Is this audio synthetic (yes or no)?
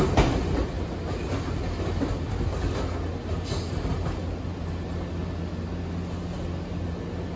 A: no